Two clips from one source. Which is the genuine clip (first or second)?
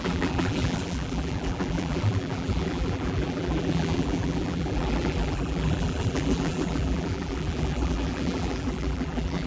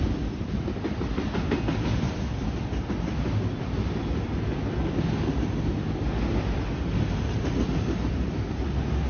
second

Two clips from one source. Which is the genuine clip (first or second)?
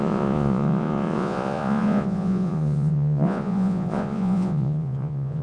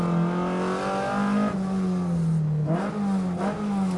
second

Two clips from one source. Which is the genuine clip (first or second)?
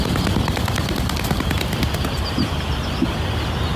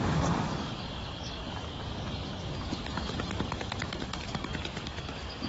first